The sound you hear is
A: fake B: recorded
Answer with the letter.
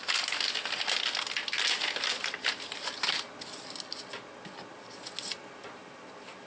B